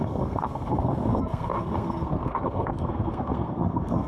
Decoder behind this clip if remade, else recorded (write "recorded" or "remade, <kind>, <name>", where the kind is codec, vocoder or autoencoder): remade, codec, SNAC